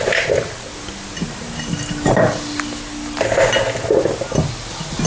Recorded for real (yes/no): yes